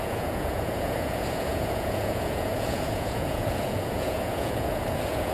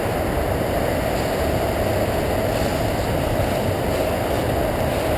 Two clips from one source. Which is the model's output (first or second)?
first